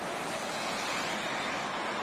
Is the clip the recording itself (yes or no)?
yes